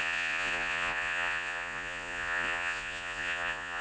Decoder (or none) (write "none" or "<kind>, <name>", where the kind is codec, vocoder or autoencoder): vocoder, Vocos